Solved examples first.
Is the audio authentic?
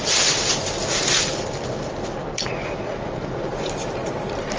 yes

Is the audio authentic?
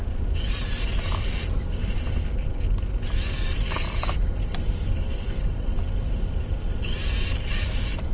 yes